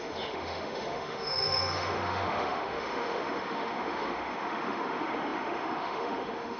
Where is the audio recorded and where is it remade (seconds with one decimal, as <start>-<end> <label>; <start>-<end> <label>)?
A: 0.0-6.6 remade